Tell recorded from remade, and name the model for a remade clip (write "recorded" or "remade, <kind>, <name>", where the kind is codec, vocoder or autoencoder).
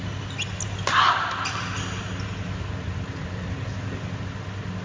recorded